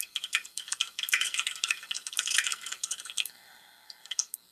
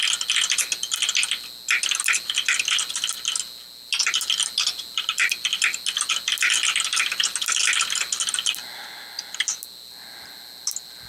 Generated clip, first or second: first